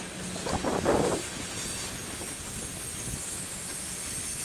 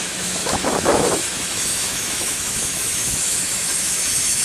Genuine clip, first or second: first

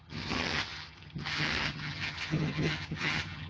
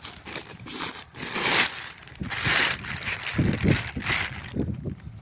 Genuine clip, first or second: second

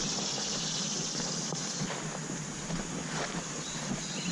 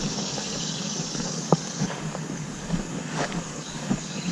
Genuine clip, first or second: first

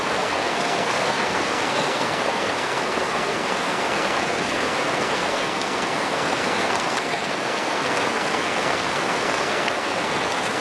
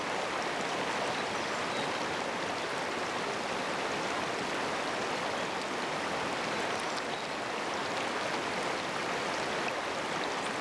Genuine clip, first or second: second